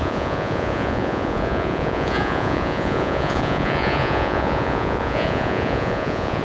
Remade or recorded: remade